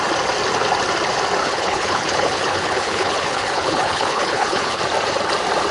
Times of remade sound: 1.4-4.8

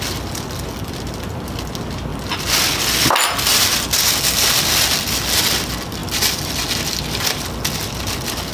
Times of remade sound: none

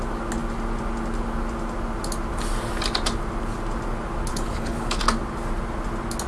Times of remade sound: 4.3-5.0